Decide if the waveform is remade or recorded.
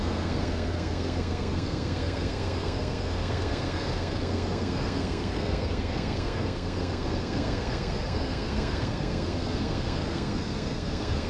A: remade